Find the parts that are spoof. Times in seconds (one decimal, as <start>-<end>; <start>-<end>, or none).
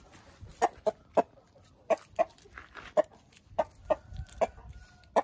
none